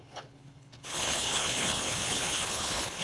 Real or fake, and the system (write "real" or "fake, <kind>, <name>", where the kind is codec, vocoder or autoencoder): fake, codec, HILCodec